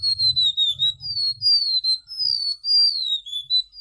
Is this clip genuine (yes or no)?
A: yes